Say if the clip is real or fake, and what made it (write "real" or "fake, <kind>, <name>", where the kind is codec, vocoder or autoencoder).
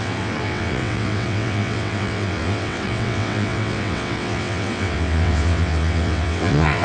fake, vocoder, WaveNeXt